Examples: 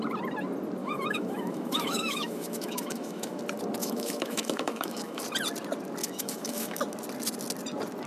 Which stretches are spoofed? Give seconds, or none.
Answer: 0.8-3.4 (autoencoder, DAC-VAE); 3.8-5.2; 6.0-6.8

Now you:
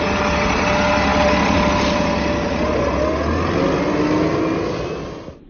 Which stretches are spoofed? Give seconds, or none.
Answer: none

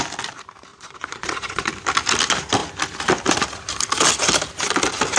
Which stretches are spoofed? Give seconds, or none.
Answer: 0.7-1.7 (vocoder, Vocos)

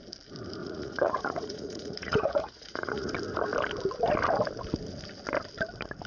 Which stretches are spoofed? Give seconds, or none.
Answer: 0.6-3.1 (vocoder, Vocos)

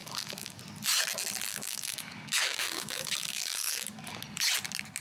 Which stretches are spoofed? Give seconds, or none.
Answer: 0.0-0.6 (codec, DAC); 1.5-4.2